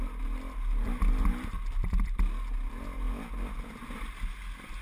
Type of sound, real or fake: real